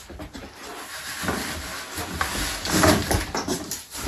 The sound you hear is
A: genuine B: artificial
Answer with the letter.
A